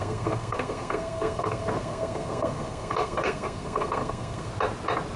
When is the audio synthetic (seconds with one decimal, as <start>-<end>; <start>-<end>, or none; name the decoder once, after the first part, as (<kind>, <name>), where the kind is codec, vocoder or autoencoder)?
0.0-4.5 (codec, SNAC)